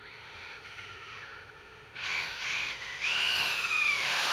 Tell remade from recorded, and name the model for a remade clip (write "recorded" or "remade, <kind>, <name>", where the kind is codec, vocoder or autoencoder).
remade, autoencoder, DAC-VAE